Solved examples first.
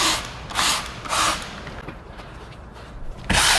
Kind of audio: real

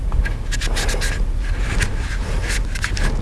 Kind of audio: real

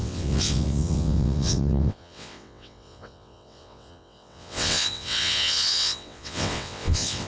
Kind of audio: fake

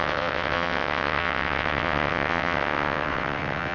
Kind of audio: fake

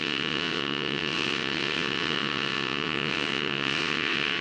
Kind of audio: fake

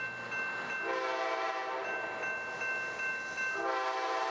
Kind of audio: real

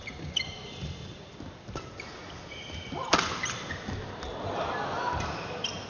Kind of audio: real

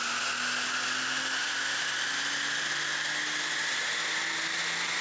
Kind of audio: real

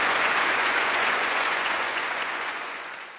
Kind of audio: fake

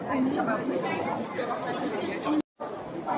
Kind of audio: real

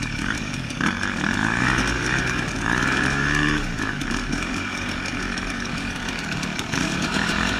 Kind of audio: fake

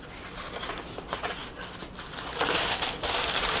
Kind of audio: real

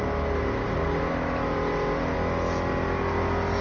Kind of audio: real